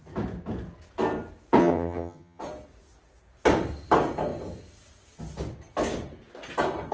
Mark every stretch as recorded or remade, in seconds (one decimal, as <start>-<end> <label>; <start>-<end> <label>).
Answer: 0.0-1.6 recorded; 1.6-2.4 remade; 2.4-6.9 recorded